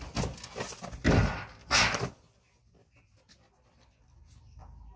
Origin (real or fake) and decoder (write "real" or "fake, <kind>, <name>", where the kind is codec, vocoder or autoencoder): real